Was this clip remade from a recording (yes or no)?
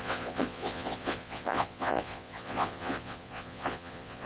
yes